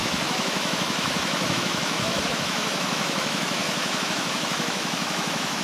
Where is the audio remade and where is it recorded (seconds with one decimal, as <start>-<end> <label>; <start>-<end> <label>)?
0.0-5.6 remade